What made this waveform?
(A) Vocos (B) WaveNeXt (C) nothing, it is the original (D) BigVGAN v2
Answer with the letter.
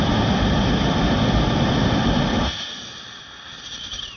C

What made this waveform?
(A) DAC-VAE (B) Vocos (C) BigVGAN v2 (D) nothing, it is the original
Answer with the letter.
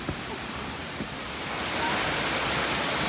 D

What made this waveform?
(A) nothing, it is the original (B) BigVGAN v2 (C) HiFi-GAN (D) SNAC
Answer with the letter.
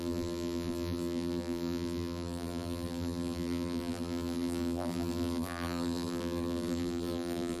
B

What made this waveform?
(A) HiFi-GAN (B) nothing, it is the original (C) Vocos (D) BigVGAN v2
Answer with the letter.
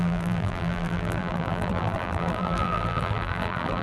D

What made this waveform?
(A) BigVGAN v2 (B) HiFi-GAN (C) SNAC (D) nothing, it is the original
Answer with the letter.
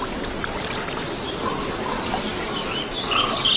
D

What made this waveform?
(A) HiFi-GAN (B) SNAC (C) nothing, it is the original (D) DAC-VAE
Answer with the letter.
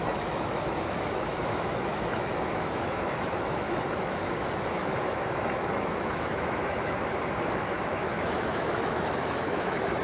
D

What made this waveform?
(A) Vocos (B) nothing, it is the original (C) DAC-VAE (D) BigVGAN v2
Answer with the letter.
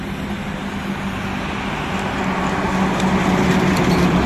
B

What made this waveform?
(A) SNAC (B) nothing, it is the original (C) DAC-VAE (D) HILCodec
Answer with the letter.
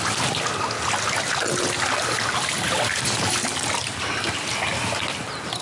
B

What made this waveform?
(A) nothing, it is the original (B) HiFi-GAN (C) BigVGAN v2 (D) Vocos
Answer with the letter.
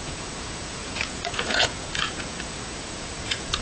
D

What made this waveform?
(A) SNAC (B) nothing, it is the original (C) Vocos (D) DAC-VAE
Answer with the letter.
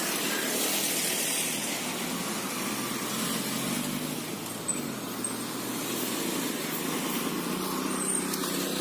B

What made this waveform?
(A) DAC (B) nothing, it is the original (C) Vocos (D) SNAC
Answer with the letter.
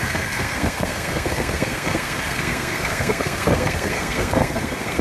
D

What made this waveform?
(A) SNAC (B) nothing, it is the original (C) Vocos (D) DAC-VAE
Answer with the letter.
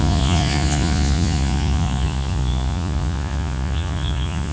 C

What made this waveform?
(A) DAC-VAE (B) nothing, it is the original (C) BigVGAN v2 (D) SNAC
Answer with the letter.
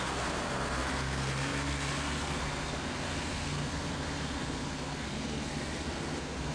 D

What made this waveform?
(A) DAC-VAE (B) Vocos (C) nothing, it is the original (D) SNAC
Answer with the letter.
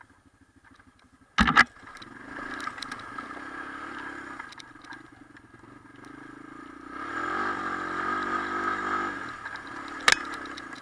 C